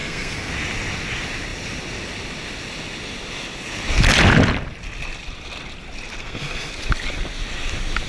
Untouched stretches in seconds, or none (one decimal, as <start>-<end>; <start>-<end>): 0.5-6.2; 6.7-8.1